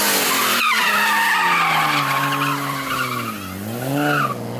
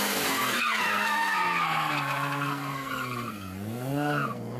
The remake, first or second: second